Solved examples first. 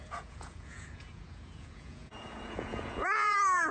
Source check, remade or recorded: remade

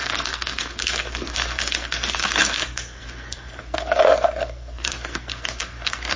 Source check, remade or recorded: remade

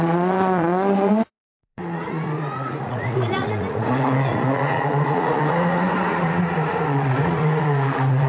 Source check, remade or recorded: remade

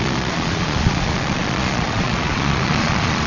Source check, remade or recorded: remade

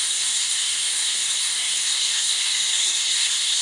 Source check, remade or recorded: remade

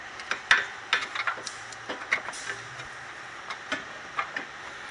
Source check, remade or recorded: recorded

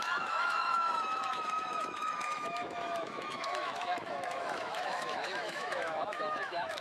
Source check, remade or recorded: remade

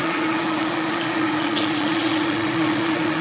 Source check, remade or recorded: remade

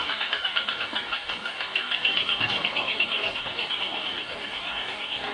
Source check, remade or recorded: remade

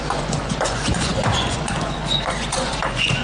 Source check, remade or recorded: remade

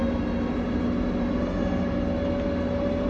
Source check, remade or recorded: recorded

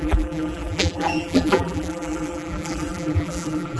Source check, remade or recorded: remade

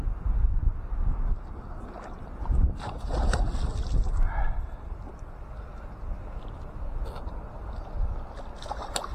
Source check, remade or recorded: recorded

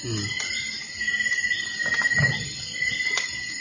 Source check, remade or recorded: recorded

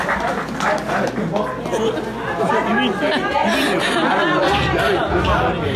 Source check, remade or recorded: recorded